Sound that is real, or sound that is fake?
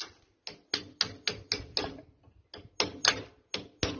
real